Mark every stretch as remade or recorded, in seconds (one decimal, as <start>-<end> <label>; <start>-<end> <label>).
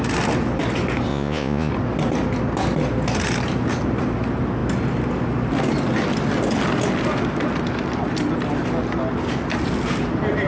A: 0.0-1.1 recorded; 1.1-1.7 remade; 1.7-10.5 recorded